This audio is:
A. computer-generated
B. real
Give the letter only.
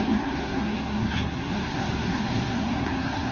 A